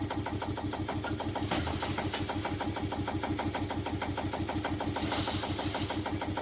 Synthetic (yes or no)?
no